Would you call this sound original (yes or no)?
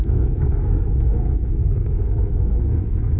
no